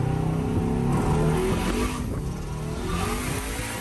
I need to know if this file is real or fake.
real